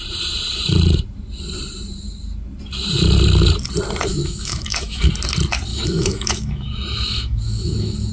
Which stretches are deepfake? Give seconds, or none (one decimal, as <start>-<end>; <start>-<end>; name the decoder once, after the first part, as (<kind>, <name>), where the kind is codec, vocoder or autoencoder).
4.1-5.1 (autoencoder, DAC-VAE); 5.7-8.1